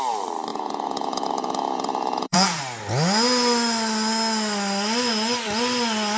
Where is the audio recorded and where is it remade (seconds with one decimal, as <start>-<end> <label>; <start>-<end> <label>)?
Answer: 0.0-0.5 recorded; 0.5-2.6 remade; 2.6-6.2 recorded